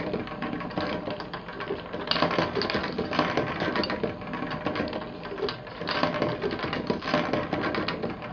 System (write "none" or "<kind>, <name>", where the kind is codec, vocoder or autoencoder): none